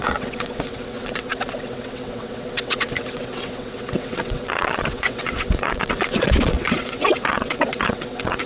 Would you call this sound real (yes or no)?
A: no